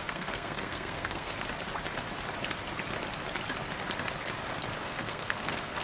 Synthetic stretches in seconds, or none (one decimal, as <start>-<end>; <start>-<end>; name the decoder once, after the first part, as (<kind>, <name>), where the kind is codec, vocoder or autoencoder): 0.0-1.3 (codec, SNAC); 4.8-5.8